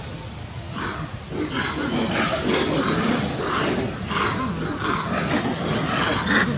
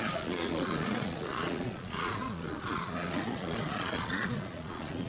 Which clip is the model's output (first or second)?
second